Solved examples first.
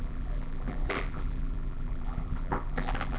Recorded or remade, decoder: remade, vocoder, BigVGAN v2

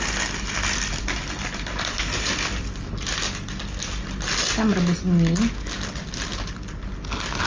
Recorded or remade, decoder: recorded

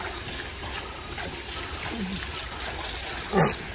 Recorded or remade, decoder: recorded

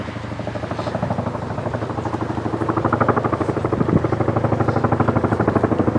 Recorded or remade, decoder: recorded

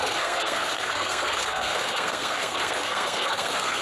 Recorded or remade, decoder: remade, codec, SNAC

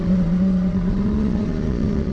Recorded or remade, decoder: remade, vocoder, Vocos